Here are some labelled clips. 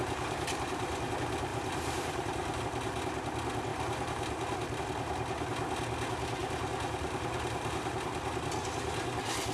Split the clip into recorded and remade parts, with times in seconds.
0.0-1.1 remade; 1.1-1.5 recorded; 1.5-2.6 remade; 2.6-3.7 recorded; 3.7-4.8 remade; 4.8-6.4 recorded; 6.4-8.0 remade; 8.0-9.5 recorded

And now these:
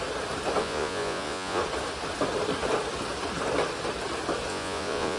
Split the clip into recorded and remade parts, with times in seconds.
0.0-0.6 recorded; 0.6-1.6 remade; 1.6-4.5 recorded; 4.5-5.2 remade

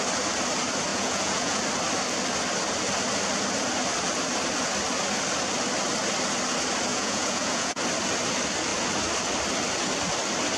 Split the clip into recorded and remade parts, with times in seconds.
0.0-0.9 recorded; 0.9-1.6 remade; 1.6-6.9 recorded; 6.9-7.8 remade; 7.8-10.6 recorded

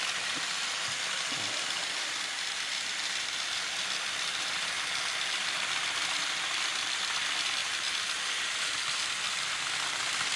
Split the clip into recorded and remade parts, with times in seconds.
0.0-10.4 recorded

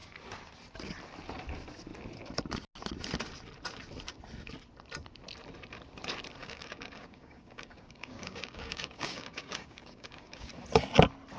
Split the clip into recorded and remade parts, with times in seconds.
0.0-6.4 recorded; 6.4-10.5 remade; 10.5-11.4 recorded

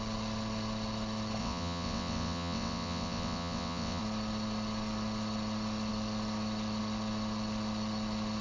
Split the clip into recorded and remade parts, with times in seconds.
0.0-1.4 recorded; 1.4-4.0 remade; 4.0-8.4 recorded